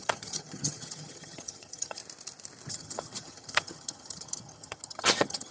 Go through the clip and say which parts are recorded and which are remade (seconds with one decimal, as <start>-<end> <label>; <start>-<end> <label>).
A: 0.0-2.0 remade; 2.0-2.7 recorded; 2.7-5.5 remade